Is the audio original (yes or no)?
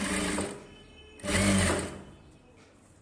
yes